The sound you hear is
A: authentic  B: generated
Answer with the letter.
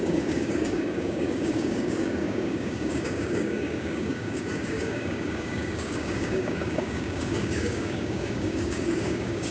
B